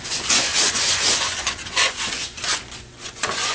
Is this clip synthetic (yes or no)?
yes